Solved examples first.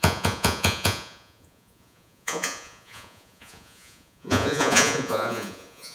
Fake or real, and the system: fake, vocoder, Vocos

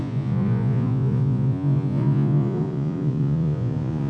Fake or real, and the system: fake, vocoder, Vocos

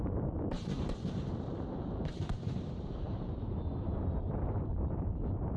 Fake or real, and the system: fake, vocoder, BigVGAN v2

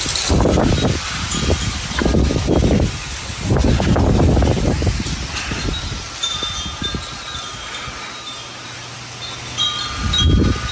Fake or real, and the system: real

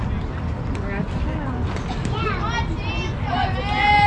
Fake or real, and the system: real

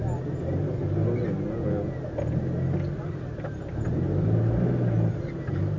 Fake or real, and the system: real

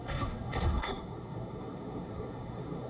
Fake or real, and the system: fake, codec, SNAC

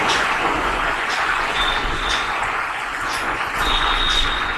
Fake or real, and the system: fake, vocoder, Vocos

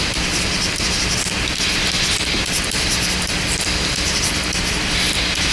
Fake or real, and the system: real